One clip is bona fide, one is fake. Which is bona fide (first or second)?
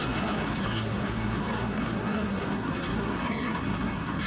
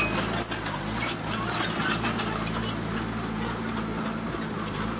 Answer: second